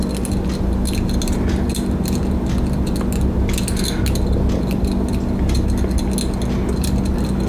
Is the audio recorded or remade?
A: recorded